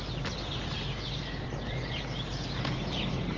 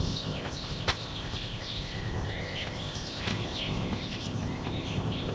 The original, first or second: first